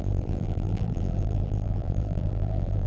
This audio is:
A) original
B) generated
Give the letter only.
B